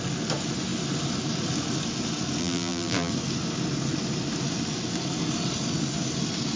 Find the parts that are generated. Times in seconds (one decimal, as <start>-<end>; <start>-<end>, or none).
2.4-3.1

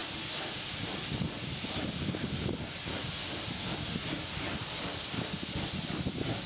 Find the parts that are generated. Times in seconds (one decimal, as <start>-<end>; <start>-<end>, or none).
none

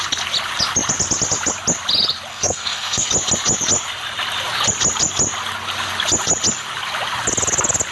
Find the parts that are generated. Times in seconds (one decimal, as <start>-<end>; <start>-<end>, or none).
2.3-3.1

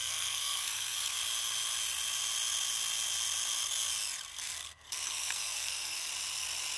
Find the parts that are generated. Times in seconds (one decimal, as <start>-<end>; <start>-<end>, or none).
0.0-1.2; 4.3-6.1

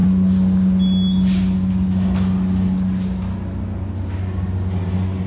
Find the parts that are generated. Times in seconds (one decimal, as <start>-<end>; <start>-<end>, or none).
none

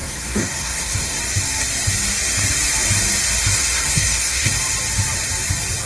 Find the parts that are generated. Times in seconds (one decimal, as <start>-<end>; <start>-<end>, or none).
0.0-1.2; 3.4-4.5